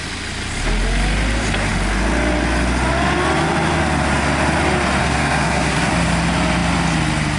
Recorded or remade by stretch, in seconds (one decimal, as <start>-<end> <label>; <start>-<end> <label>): 0.0-5.0 recorded; 5.0-5.9 remade; 5.9-7.4 recorded